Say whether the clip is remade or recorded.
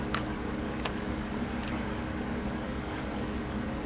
remade